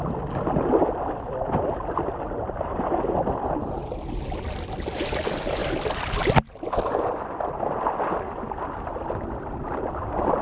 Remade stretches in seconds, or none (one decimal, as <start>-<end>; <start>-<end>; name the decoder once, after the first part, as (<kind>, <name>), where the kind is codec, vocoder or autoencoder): none